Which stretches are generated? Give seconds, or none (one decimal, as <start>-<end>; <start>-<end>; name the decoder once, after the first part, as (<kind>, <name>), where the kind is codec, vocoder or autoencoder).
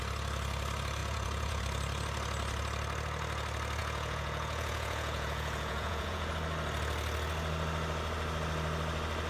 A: 1.0-1.6 (vocoder, Vocos); 3.8-6.3